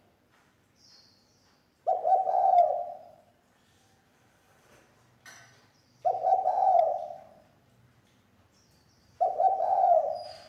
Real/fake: fake